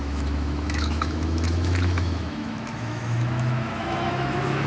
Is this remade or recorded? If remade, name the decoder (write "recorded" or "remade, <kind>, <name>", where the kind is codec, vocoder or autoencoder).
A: remade, autoencoder, DAC-VAE